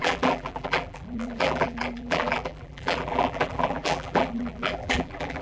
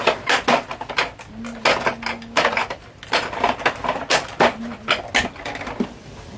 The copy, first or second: first